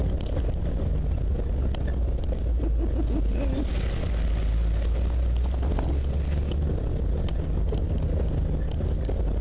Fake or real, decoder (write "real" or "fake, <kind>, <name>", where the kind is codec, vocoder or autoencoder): real